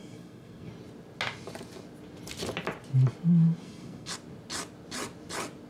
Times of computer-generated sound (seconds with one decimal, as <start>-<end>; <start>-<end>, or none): 0.0-0.7; 3.6-4.1